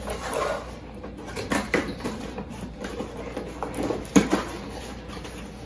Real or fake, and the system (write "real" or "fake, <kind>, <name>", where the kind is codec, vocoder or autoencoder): real